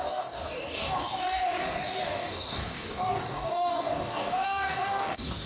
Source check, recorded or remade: remade